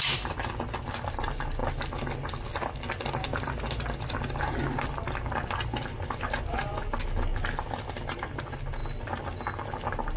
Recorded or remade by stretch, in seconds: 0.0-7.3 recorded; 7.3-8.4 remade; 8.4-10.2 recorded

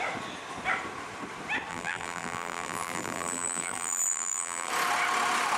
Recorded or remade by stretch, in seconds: 0.0-1.7 recorded; 1.7-4.7 remade; 4.7-5.6 recorded

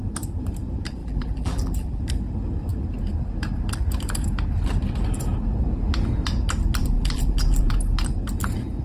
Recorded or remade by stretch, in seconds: 0.0-1.0 recorded; 1.0-2.0 remade; 2.0-6.8 recorded; 6.8-7.7 remade; 7.7-8.8 recorded

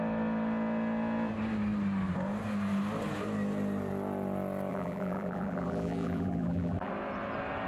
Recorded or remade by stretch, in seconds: 0.0-4.7 recorded; 4.7-6.9 remade; 6.9-7.7 recorded